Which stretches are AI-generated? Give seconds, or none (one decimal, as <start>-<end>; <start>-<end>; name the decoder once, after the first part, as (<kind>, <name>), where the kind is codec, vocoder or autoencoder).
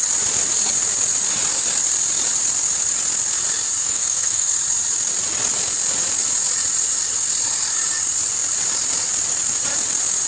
3.8-4.5 (autoencoder, DAC-VAE)